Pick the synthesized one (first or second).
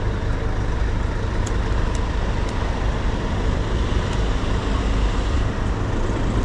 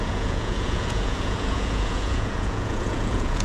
second